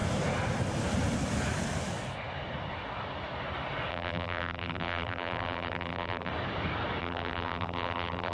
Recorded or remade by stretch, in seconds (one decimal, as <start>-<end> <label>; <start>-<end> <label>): 0.0-3.9 recorded; 3.9-6.3 remade; 6.3-7.0 recorded; 7.0-8.3 remade